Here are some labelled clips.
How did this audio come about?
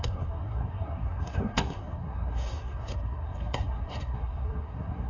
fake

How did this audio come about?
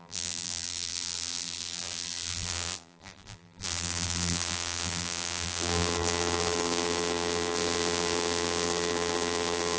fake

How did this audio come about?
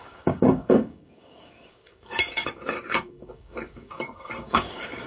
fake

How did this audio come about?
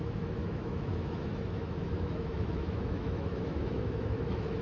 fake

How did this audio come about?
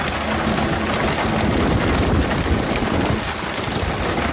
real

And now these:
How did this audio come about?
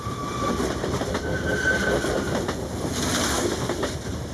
real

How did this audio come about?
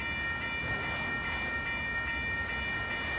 real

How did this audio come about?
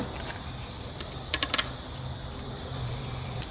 fake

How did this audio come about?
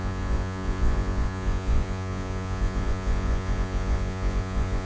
fake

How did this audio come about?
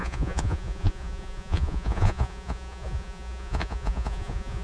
fake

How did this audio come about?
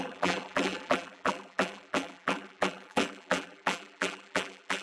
fake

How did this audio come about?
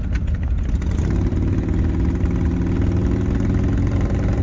real